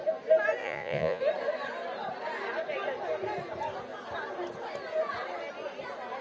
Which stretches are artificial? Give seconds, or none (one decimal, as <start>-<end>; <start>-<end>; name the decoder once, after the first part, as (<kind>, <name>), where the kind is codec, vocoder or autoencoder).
0.6-1.2 (vocoder, Vocos)